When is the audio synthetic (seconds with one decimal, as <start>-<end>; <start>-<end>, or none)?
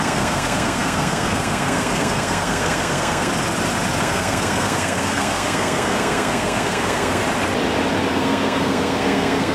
0.0-3.3; 4.0-7.2; 8.1-9.5